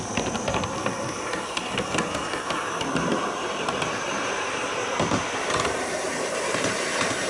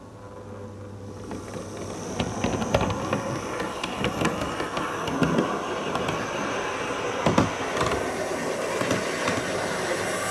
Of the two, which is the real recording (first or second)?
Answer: second